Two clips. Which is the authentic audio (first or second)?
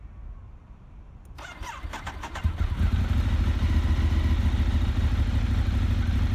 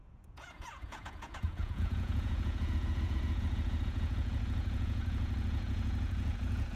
first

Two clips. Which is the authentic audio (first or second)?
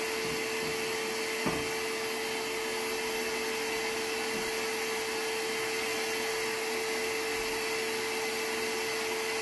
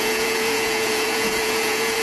first